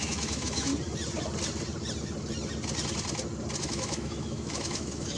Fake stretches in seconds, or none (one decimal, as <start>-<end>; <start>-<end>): 0.0-0.7; 3.6-5.2